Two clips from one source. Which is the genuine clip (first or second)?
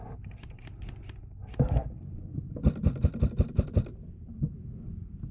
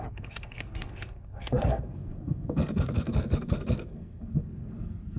first